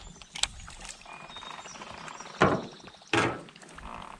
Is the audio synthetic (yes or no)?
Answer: no